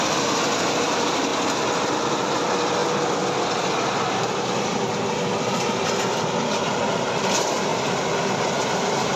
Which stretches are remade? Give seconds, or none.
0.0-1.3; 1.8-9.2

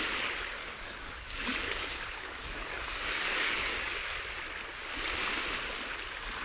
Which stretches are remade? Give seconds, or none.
0.6-4.2

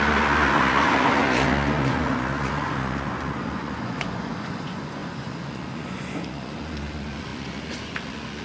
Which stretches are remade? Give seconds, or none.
0.0-8.4